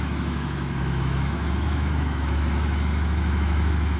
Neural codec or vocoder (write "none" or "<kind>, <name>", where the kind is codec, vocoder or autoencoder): autoencoder, DAC-VAE